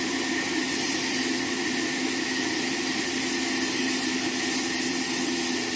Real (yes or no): yes